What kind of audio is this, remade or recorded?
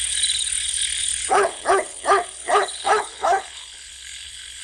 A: remade